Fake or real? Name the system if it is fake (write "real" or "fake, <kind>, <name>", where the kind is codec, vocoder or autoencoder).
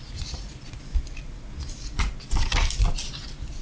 real